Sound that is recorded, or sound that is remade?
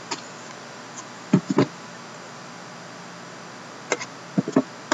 recorded